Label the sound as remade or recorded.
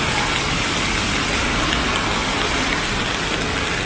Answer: recorded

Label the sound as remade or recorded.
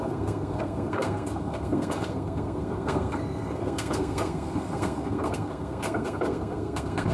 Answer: remade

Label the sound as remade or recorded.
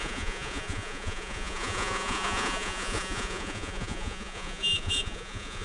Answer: remade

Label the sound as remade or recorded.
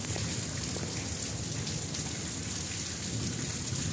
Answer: recorded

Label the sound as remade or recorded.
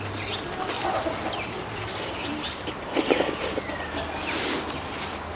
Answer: recorded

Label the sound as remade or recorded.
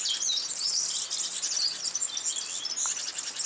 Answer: recorded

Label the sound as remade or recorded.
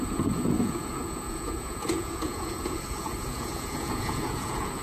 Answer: remade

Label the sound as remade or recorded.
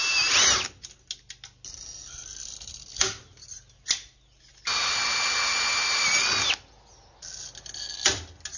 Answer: recorded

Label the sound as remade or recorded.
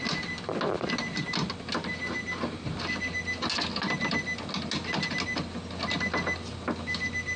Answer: recorded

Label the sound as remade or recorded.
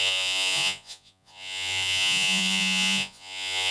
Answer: remade